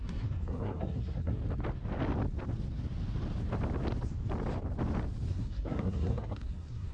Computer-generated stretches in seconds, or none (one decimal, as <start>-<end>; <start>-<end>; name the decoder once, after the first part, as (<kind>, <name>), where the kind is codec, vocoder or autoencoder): 0.0-1.4 (codec, SNAC); 5.3-6.9